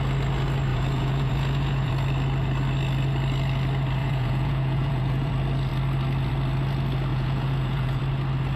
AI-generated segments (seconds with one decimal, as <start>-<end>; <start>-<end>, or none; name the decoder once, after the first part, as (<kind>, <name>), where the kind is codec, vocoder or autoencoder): 0.7-1.9 (vocoder, Vocos); 4.0-5.3; 7.1-8.0